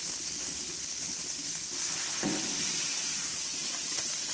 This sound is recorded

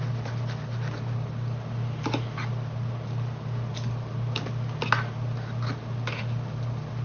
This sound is recorded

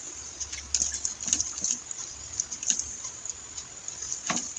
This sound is recorded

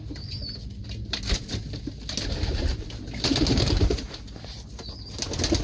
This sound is recorded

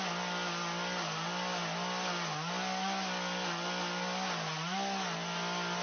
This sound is recorded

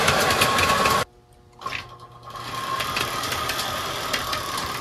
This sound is recorded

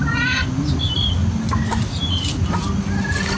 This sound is recorded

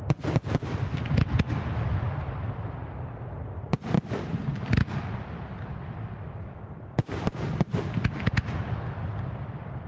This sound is recorded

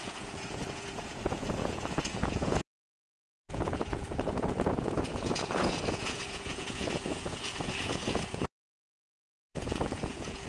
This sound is remade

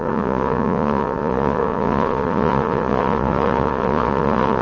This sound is remade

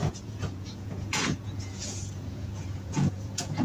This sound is remade